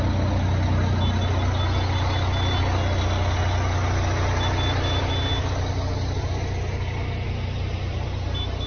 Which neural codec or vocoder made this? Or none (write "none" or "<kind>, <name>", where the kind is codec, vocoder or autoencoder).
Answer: none